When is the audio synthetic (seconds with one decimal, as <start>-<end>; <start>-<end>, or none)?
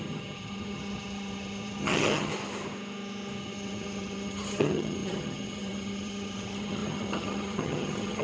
0.0-2.3; 3.4-8.2